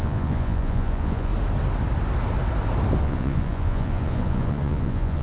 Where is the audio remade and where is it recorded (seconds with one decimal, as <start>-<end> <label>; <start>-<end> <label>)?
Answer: 0.0-1.3 remade; 1.3-3.0 recorded; 3.0-5.2 remade